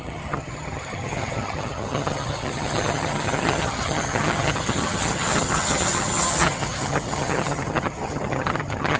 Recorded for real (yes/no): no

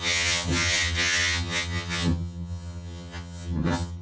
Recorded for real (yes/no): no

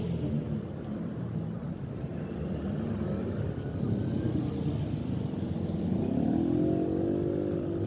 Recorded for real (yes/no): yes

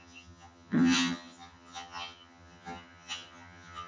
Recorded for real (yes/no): no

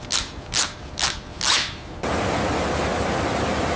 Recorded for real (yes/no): yes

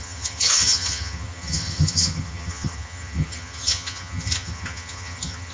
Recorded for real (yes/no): no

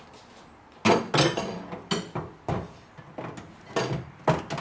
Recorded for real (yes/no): yes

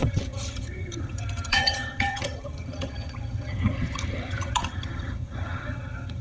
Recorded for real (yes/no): no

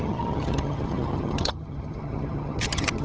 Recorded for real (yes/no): no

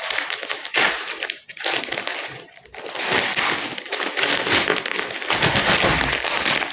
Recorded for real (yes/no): yes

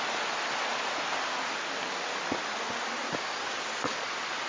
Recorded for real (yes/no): yes